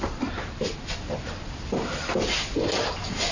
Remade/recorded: recorded